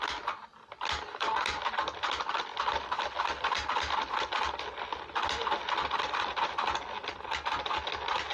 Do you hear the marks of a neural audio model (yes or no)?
no